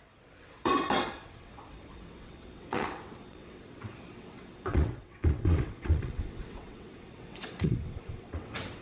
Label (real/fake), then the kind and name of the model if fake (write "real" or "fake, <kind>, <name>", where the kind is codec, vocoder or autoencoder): fake, vocoder, WaveNeXt